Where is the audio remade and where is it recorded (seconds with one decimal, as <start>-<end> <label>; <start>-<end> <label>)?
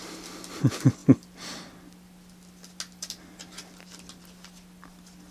0.0-5.3 recorded